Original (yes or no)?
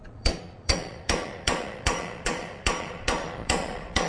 no